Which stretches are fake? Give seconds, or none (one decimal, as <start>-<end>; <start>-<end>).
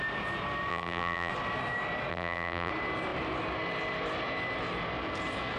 0.7-1.3; 2.1-2.7